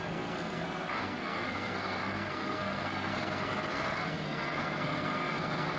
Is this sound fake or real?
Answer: fake